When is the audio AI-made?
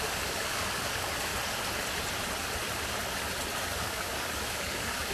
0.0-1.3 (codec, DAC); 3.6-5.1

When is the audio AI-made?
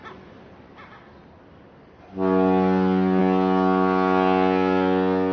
none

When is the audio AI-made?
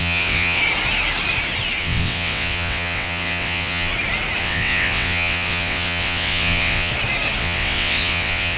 0.0-0.6 (vocoder, WaveNeXt); 1.8-3.9; 4.4-6.9; 7.4-8.6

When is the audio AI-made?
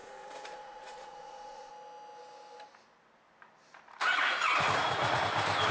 0.0-1.7 (vocoder, Vocos); 4.1-5.2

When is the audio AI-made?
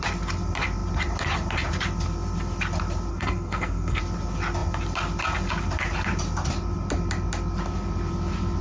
3.1-4.0 (codec, SNAC)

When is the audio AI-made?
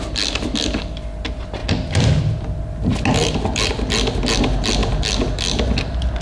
none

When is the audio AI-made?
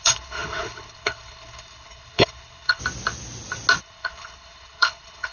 0.0-2.8 (codec, HILCodec); 3.8-5.3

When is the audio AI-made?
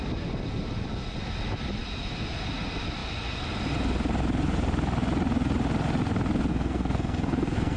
6.5-7.8 (codec, SNAC)